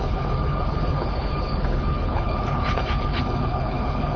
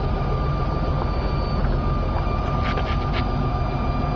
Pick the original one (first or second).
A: second